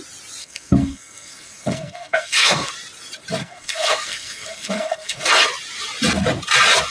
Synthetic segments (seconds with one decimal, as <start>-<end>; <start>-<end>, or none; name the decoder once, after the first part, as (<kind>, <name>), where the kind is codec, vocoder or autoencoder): 0.4-2.7 (codec, SNAC); 3.4-5.3